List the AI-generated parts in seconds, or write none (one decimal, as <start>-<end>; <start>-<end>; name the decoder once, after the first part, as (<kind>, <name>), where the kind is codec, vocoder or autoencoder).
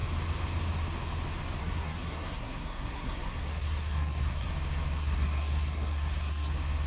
1.6-4.5 (codec, SNAC); 5.0-6.5